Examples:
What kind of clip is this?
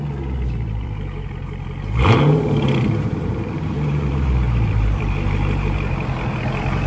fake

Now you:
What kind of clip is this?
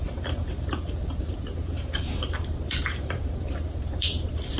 fake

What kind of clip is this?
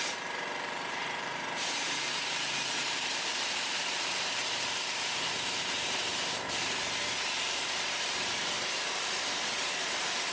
fake